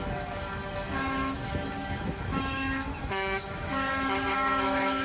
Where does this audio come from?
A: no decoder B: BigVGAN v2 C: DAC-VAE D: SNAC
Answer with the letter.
C